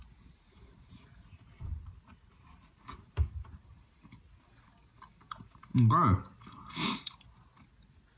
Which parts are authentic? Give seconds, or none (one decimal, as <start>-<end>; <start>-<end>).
0.0-0.7; 3.7-8.2